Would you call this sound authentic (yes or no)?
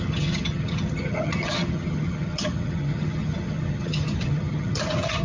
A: no